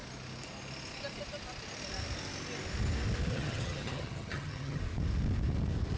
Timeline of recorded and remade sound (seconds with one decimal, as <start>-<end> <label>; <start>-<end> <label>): 0.0-3.3 recorded; 3.3-4.8 remade; 4.8-6.0 recorded